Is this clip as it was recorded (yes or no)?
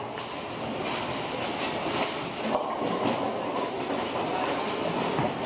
yes